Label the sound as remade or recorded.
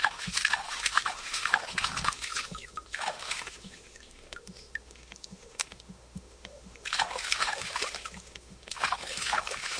remade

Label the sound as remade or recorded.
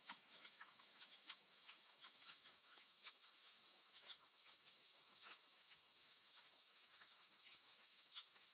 remade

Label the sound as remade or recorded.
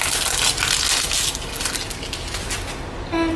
recorded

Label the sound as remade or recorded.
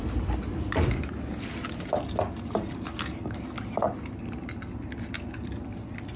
recorded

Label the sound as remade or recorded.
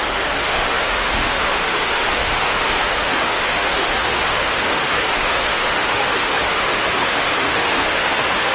remade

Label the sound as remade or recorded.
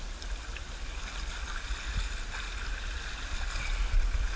recorded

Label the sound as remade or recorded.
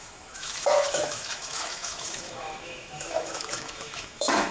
remade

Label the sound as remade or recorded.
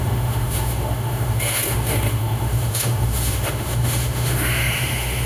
remade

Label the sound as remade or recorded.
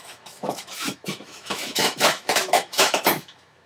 remade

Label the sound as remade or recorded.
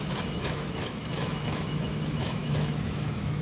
remade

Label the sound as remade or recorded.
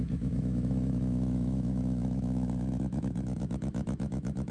remade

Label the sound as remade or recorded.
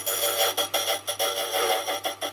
recorded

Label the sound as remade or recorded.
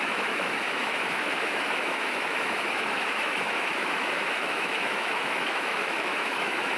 remade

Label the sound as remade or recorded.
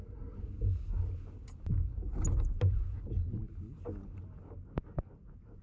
recorded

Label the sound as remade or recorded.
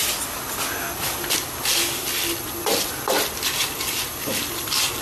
recorded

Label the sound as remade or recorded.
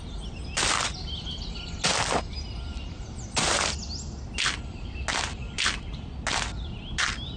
recorded